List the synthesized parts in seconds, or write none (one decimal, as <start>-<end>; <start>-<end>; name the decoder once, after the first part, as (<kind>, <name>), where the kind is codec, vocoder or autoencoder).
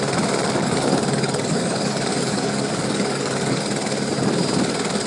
0.6-3.6 (codec, DAC)